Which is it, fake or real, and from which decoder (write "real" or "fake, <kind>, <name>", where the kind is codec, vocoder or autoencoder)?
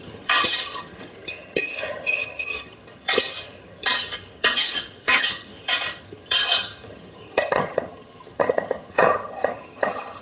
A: fake, vocoder, HiFi-GAN